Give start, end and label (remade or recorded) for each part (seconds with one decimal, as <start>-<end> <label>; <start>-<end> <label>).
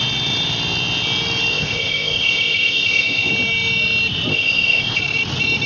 0.0-1.5 recorded; 1.5-3.3 remade; 3.3-4.3 recorded; 4.3-5.0 remade; 5.0-5.7 recorded